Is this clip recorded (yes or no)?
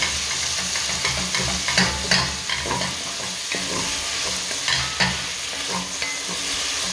yes